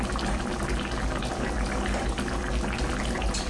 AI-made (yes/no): no